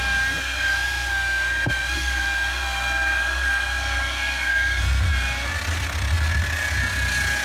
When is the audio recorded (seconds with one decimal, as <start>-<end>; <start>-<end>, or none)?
0.0-0.4; 4.8-7.4